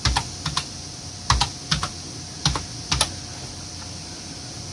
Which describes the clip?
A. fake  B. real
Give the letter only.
B